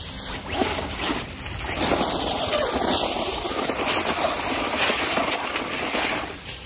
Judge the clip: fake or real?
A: real